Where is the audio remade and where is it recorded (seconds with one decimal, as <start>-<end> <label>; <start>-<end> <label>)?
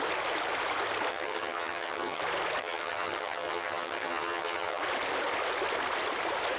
0.0-1.1 recorded; 1.1-2.2 remade; 2.2-2.6 recorded; 2.6-4.8 remade; 4.8-6.6 recorded